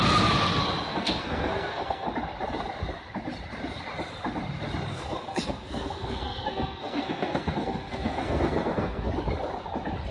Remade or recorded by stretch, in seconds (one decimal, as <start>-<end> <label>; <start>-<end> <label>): 0.0-0.9 recorded; 0.9-2.1 remade; 2.1-4.9 recorded; 4.9-9.1 remade; 9.1-10.1 recorded